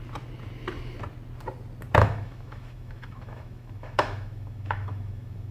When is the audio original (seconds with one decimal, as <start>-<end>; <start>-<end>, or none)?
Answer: 0.0-2.0